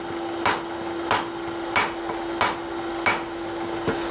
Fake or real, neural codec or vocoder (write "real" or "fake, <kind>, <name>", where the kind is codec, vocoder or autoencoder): real